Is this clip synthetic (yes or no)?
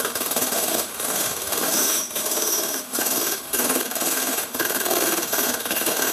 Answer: yes